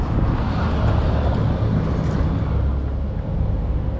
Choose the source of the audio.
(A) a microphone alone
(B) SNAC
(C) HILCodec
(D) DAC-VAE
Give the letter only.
A